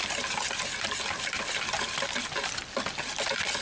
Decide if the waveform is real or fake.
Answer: real